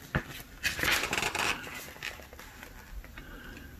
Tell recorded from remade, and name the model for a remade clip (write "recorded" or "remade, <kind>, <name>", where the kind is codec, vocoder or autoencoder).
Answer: recorded